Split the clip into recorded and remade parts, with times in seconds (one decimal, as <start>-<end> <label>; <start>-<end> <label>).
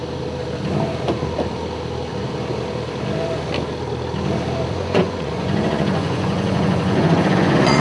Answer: 0.0-4.7 recorded; 4.7-7.8 remade